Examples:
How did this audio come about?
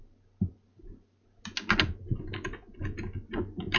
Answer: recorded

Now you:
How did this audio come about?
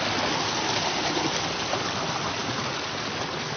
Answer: recorded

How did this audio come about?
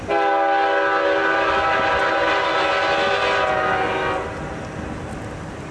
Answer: recorded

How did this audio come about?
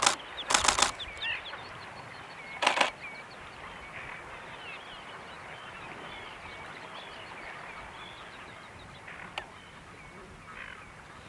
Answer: recorded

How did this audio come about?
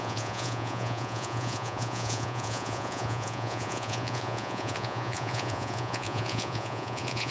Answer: remade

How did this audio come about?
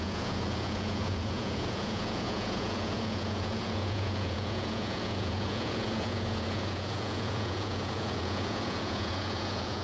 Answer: remade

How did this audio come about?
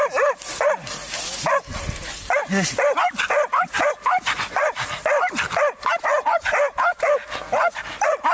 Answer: recorded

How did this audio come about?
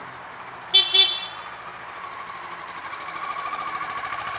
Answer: recorded